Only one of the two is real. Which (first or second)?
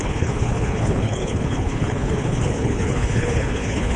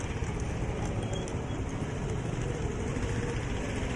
second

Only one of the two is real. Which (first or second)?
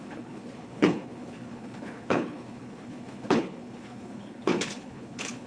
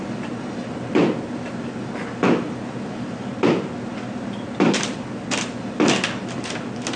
second